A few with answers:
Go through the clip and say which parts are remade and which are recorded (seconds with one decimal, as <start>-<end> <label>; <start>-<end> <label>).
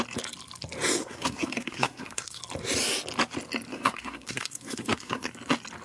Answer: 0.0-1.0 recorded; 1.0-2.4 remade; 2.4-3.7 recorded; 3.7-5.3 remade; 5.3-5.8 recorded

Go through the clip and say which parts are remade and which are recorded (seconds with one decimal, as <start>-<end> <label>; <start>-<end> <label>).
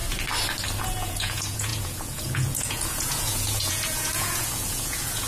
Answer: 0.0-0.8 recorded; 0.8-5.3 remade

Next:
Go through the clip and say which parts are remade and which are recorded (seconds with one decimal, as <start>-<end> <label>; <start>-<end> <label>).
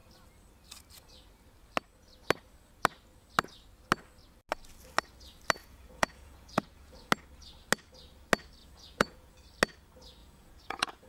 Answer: 0.0-5.6 recorded; 5.6-7.1 remade; 7.1-8.6 recorded; 8.6-9.3 remade; 9.3-10.2 recorded; 10.2-11.1 remade